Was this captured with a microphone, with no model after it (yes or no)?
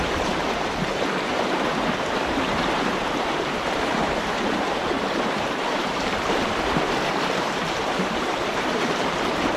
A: no